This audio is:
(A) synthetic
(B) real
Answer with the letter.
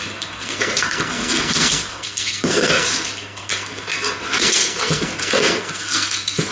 A